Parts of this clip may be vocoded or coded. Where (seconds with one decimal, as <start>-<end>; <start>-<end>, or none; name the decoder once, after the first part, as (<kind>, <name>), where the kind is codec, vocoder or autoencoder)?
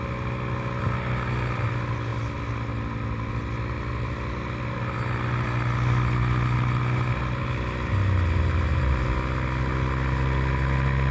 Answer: none